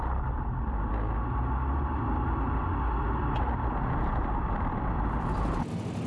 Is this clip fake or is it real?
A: real